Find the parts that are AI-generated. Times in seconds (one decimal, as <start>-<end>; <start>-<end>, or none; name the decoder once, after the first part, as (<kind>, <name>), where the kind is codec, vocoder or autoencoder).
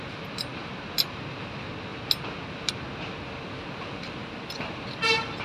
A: none